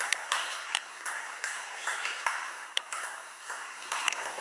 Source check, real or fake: fake